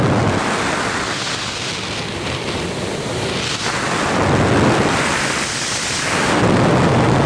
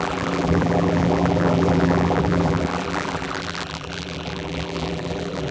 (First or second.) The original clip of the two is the first